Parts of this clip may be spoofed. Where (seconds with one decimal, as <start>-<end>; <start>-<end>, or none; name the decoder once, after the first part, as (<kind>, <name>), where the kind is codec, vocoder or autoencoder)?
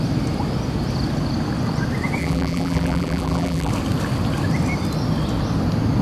2.2-3.7 (vocoder, BigVGAN v2)